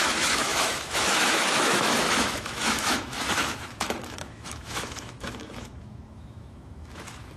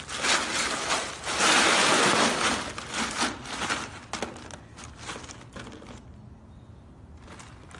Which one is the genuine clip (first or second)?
second